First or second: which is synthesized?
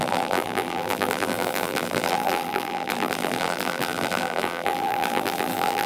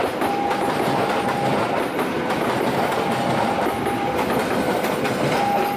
first